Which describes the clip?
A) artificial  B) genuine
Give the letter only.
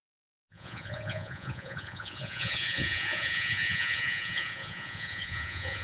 A